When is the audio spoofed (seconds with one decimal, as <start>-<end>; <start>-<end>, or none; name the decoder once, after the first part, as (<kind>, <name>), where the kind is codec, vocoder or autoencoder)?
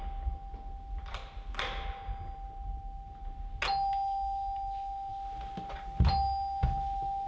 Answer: none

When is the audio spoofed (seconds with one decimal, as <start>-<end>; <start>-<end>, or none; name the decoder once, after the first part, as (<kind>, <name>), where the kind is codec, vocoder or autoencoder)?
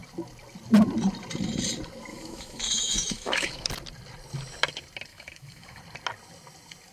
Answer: 2.1-3.7 (autoencoder, DAC-VAE); 5.1-5.8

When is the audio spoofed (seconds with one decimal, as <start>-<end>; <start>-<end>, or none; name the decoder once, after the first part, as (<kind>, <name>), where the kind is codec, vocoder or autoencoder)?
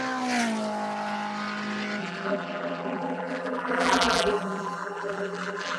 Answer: 2.0-5.8 (vocoder, BigVGAN v2)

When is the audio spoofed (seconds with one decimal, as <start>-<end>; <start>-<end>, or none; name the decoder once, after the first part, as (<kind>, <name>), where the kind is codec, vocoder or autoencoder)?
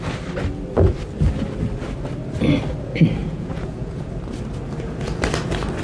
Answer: 3.2-4.1 (vocoder, Vocos)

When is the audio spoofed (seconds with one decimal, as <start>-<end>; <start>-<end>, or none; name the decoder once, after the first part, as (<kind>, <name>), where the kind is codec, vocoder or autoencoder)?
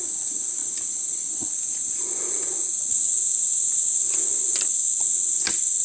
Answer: 0.6-1.5 (vocoder, BigVGAN v2)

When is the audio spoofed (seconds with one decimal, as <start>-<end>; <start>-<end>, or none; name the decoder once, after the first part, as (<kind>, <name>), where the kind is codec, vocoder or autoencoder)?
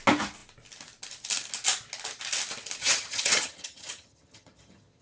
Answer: 2.8-5.0 (vocoder, HiFi-GAN)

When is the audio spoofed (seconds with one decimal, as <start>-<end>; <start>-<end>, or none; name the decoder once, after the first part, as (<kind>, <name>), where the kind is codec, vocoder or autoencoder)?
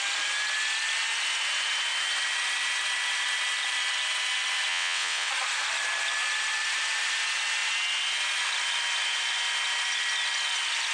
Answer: 4.7-5.3 (vocoder, WaveNeXt)